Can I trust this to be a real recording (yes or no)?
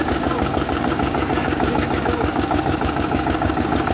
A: no